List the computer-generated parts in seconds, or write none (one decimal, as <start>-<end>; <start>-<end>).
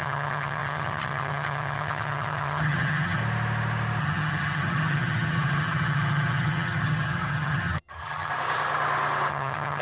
0.0-3.2; 4.0-8.3; 9.3-9.8